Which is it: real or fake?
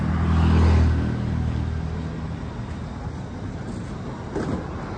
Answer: real